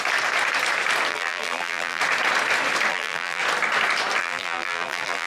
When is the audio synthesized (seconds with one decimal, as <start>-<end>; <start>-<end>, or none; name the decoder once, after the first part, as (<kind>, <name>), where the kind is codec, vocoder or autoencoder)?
1.1-2.0 (vocoder, BigVGAN v2); 2.9-3.4; 4.2-5.3